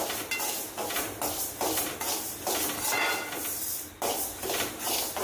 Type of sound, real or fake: real